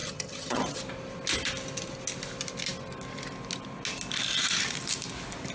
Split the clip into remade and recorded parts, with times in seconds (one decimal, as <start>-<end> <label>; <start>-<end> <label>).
0.0-0.8 remade; 0.8-5.5 recorded